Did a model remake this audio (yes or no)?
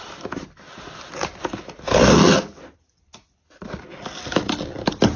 no